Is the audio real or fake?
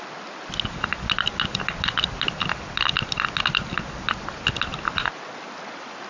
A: real